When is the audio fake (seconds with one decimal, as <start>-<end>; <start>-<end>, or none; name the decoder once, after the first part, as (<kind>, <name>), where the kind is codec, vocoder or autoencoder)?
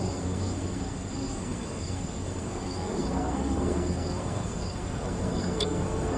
0.0-6.2 (codec, SNAC)